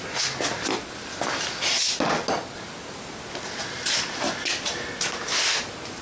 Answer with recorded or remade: recorded